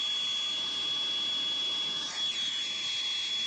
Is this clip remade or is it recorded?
recorded